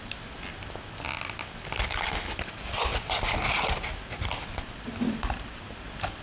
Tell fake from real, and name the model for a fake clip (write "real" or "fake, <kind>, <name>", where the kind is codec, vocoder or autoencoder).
real